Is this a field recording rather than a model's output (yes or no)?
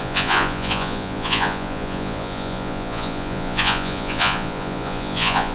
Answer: no